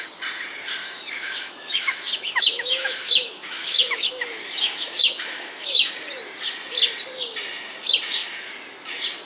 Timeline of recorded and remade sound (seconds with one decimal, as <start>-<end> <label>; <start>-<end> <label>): 0.0-0.8 recorded; 0.8-5.9 remade; 5.9-9.3 recorded